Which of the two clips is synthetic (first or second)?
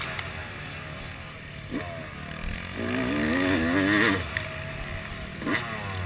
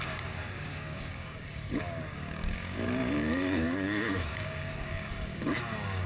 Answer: second